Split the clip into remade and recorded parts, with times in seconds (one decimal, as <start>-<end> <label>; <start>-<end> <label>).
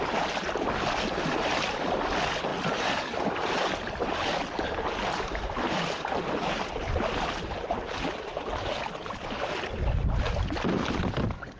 0.0-11.6 recorded